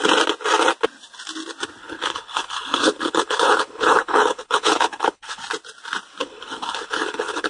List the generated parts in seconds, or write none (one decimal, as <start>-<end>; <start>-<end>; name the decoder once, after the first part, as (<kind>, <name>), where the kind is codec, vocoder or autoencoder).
1.8-5.4 (codec, HILCodec); 6.2-7.5